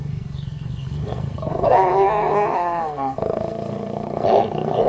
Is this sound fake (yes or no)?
yes